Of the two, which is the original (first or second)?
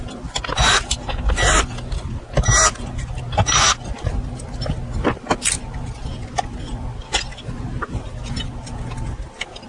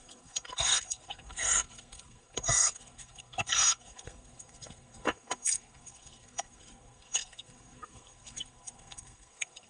first